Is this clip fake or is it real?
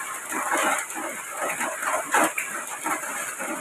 real